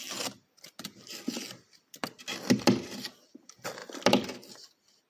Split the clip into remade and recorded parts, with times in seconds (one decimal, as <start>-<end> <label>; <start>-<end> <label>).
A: 0.0-5.1 recorded